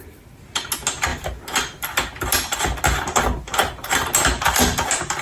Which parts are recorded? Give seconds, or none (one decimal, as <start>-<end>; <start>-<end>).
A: 0.0-5.2